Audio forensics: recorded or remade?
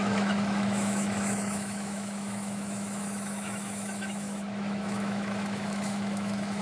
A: remade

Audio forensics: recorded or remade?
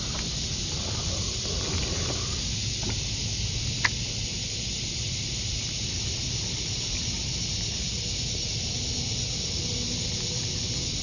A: recorded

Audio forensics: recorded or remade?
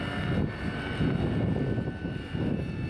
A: recorded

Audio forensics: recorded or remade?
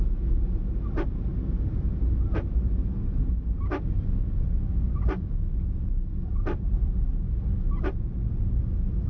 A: recorded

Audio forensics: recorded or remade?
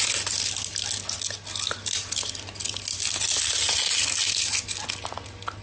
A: recorded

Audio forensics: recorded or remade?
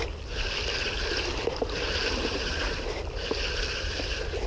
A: recorded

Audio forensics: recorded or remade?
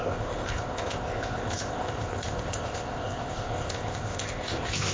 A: remade